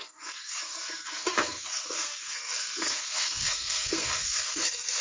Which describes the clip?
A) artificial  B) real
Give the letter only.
A